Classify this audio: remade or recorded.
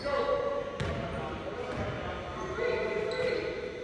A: recorded